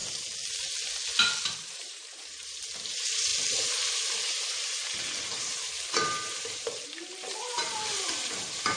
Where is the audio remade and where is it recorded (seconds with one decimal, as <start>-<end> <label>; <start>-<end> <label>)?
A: 0.0-1.4 recorded; 1.4-3.3 remade; 3.3-3.9 recorded; 3.9-8.8 remade

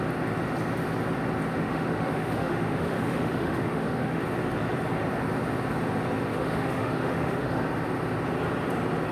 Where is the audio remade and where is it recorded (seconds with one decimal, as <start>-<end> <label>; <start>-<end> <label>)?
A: 0.0-1.6 recorded; 1.6-4.2 remade; 4.2-6.3 recorded; 6.3-7.6 remade; 7.6-9.1 recorded

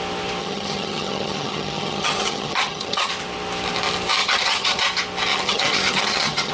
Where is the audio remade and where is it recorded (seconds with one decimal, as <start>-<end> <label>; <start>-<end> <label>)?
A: 0.0-0.4 recorded; 0.4-3.1 remade; 3.1-4.2 recorded; 4.2-4.8 remade; 4.8-5.3 recorded; 5.3-6.5 remade

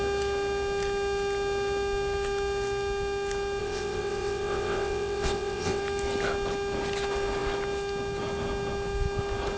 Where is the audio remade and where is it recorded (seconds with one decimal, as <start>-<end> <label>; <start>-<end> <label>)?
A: 0.0-3.6 recorded; 3.6-5.8 remade; 5.8-9.6 recorded

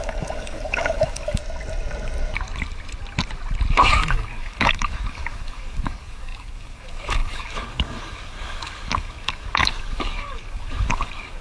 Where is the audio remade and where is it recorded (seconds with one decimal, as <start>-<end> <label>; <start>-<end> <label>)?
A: 0.0-1.4 remade; 1.4-3.7 recorded; 3.7-11.4 remade